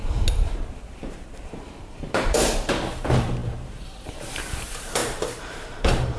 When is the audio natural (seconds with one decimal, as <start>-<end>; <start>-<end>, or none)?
0.0-0.9